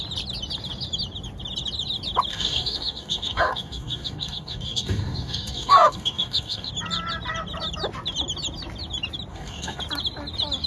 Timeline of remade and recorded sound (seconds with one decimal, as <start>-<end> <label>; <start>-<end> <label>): 0.0-2.3 recorded; 2.3-6.7 remade; 6.7-9.3 recorded; 9.3-9.8 remade; 9.8-10.7 recorded